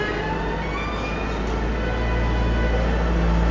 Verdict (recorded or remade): recorded